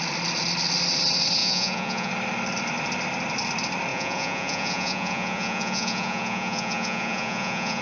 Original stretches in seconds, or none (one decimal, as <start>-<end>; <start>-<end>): 0.0-1.4; 2.1-3.9